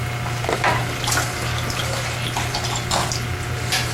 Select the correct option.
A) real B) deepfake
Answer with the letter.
A